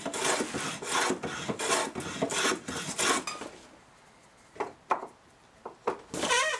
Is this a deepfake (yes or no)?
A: no